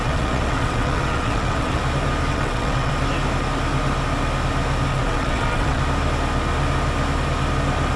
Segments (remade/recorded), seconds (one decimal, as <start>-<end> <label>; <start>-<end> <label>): 0.0-1.8 remade; 1.8-2.3 recorded; 2.3-2.9 remade; 2.9-4.9 recorded; 4.9-5.8 remade; 5.8-8.0 recorded